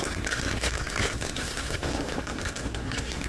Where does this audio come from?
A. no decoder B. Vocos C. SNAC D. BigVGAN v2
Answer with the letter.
C